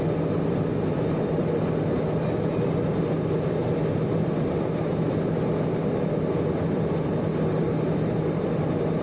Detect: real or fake real